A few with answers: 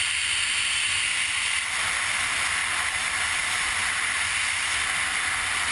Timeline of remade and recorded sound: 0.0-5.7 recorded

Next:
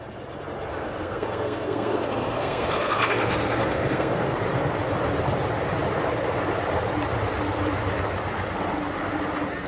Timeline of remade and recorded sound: 0.0-0.7 recorded; 0.7-4.4 remade; 4.4-9.7 recorded

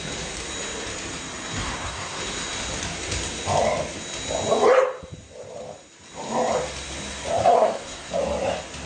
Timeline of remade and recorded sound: 0.0-1.6 recorded; 1.6-2.2 remade; 2.2-7.4 recorded; 7.4-8.1 remade; 8.1-8.9 recorded

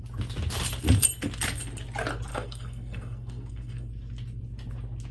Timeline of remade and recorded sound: 0.0-2.3 recorded; 2.3-3.9 remade; 3.9-5.1 recorded

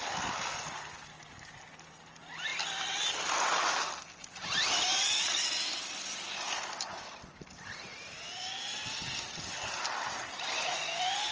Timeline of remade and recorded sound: 0.0-11.3 recorded

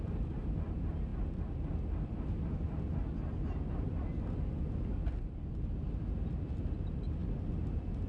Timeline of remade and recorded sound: 0.0-8.1 recorded